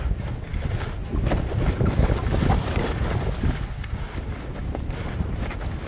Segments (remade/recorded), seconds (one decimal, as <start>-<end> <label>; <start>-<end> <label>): 0.0-5.9 recorded